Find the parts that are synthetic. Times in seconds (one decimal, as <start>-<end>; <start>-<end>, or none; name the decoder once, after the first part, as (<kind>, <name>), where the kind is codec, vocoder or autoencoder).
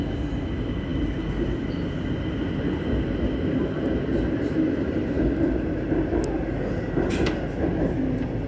none